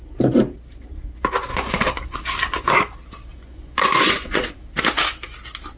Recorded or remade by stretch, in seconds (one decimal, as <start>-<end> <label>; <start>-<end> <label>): 0.0-1.5 recorded; 1.5-2.7 remade; 2.7-3.3 recorded; 3.3-4.6 remade; 4.6-5.8 recorded